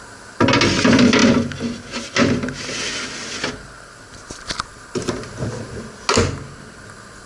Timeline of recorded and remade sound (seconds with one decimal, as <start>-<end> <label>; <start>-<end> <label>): 0.0-7.3 recorded